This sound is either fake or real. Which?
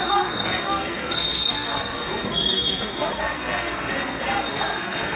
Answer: fake